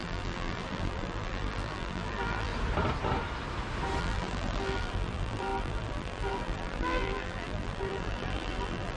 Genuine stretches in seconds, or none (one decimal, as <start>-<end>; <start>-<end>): 2.5-4.0